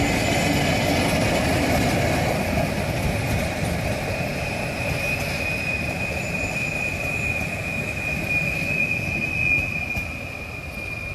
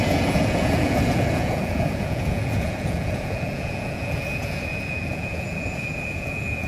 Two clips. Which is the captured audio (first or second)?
first